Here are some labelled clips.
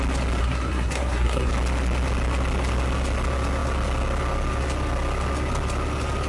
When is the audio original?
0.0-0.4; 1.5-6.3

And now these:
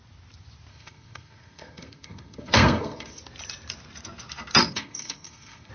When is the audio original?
0.0-0.7; 3.2-4.6

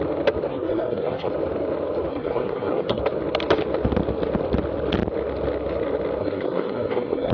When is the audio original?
0.0-0.5; 1.3-2.1; 3.0-6.2